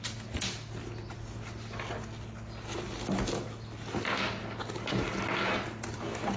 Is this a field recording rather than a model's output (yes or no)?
yes